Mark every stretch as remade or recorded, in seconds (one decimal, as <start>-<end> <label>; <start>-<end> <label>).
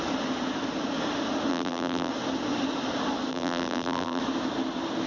0.0-1.5 recorded; 1.5-2.1 remade; 2.1-3.3 recorded; 3.3-4.2 remade; 4.2-5.1 recorded